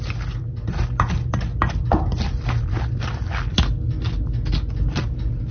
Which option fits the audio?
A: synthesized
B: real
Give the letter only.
B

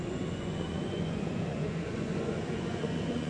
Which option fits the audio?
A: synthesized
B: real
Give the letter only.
A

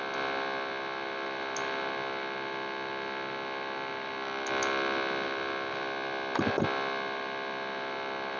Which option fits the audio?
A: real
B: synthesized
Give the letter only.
A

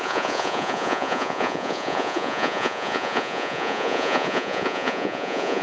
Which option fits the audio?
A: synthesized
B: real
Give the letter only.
A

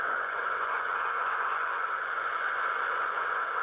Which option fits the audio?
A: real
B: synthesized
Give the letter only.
B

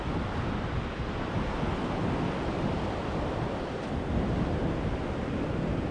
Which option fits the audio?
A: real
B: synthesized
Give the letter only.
A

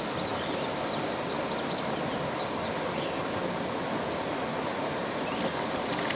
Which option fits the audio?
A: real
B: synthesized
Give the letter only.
A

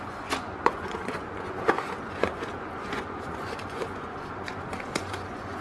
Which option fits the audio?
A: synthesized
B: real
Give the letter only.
A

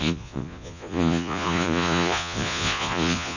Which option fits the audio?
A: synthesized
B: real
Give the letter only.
A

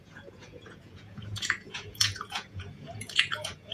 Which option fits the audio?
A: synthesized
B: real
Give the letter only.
A